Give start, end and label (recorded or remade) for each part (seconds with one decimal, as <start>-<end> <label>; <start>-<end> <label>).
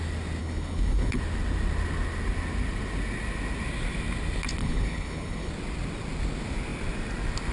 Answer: 0.0-0.4 recorded; 0.4-1.2 remade; 1.2-4.6 recorded; 4.6-5.5 remade; 5.5-7.5 recorded